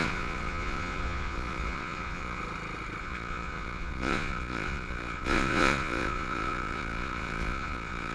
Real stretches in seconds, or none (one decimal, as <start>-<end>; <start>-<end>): 2.4-3.0